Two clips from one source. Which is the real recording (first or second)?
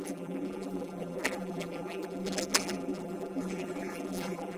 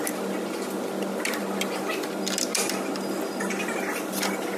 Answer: second